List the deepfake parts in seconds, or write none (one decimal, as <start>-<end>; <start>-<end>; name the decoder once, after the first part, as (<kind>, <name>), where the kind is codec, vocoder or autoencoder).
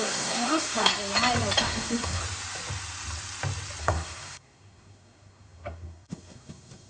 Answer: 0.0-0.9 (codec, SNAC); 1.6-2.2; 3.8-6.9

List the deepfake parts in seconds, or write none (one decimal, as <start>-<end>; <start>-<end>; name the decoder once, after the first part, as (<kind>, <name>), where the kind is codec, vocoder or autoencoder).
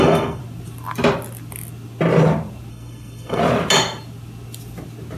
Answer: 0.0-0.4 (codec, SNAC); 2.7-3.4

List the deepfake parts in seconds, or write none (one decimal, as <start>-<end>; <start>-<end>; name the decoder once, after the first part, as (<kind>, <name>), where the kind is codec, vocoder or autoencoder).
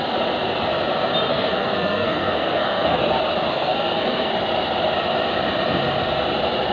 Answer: 1.3-3.0 (codec, SNAC); 3.5-4.3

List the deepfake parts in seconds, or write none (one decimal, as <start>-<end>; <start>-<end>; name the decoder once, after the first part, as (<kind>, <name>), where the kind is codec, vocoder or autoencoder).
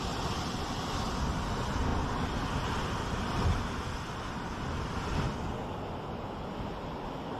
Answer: none